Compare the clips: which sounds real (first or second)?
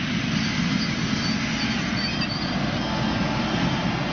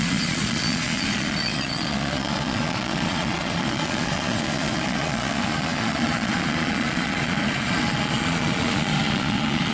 first